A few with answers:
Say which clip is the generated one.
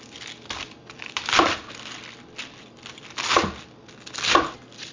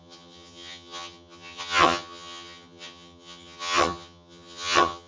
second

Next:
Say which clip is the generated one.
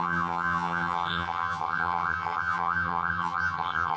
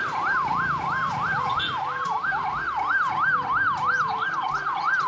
first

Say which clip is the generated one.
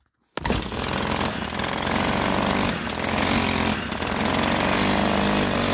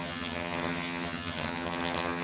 second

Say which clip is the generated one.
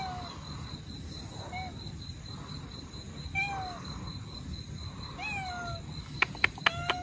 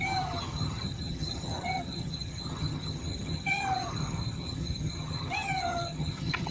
second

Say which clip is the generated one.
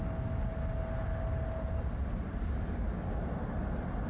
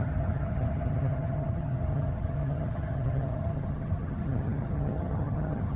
second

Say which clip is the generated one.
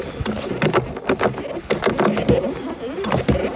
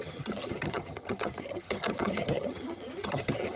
second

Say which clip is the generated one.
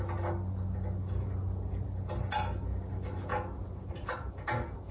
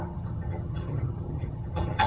second